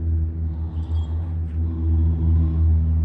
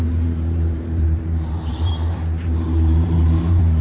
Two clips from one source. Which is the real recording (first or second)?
first